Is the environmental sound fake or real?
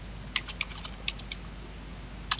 real